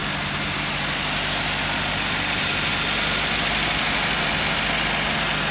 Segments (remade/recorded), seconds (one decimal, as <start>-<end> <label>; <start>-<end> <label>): 0.0-5.5 recorded